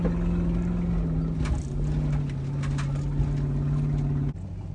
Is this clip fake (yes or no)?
no